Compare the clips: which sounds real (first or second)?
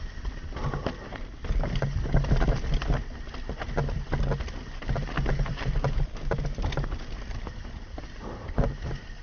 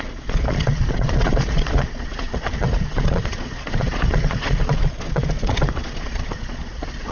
first